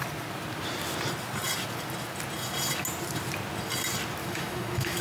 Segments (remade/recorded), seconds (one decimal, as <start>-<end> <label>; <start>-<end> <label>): 0.0-4.2 recorded; 4.2-5.0 remade